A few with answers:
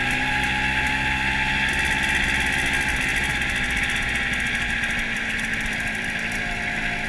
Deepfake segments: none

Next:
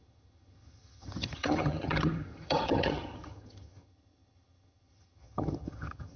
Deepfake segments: 0.0-6.2 (vocoder, HiFi-GAN)

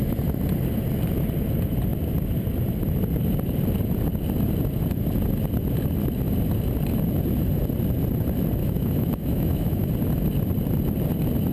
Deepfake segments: 8.6-9.9 (autoencoder, DAC-VAE)

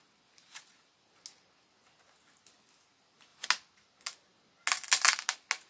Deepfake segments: none